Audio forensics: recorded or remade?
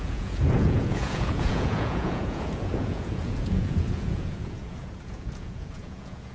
remade